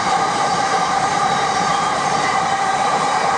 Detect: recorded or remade remade